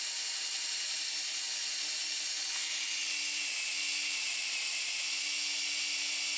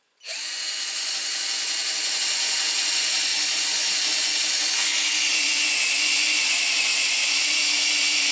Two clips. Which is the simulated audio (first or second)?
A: second